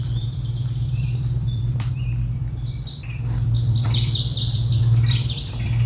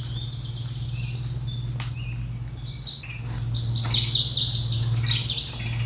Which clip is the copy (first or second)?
first